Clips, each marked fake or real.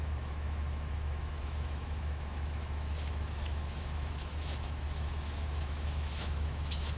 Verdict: fake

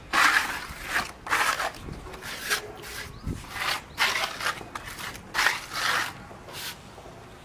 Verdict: real